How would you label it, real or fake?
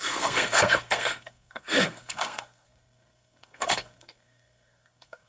fake